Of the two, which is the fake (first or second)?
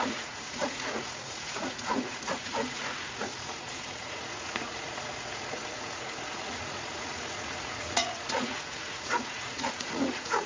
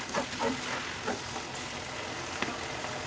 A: first